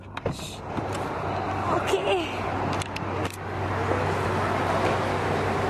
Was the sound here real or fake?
real